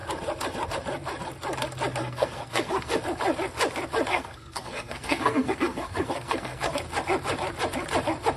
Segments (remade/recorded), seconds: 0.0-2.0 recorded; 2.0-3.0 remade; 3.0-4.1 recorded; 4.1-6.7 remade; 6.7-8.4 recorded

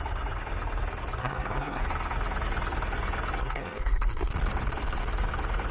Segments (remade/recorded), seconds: 0.0-1.2 recorded; 1.2-1.8 remade; 1.8-3.4 recorded; 3.4-4.3 remade; 4.3-5.7 recorded

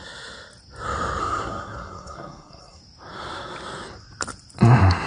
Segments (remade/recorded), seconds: 0.0-1.2 recorded; 1.2-2.8 remade; 2.8-5.1 recorded

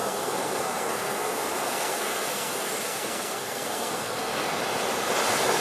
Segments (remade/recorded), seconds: 0.0-4.6 remade; 4.6-5.6 recorded

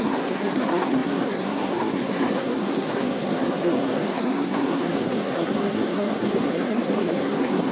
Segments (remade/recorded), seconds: 0.0-7.7 remade

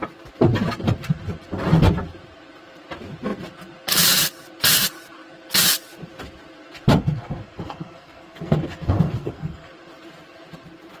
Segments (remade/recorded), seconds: 0.0-6.9 recorded; 6.9-9.7 remade; 9.7-11.0 recorded

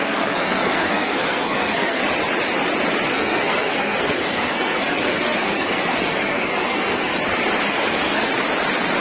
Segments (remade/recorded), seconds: 0.0-2.0 remade; 2.0-3.1 recorded; 3.1-7.1 remade; 7.1-7.7 recorded; 7.7-8.3 remade; 8.3-9.0 recorded